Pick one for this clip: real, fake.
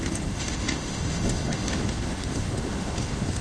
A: fake